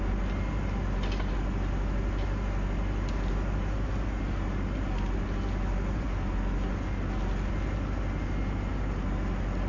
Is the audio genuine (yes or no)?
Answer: yes